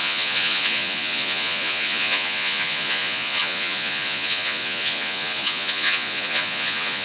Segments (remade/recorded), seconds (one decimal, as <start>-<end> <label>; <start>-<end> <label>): 0.0-7.0 remade